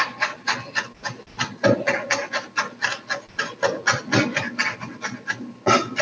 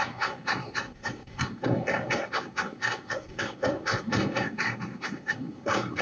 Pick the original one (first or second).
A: first